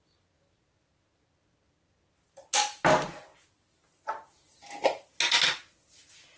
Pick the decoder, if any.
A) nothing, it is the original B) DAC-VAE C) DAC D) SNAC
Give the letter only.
A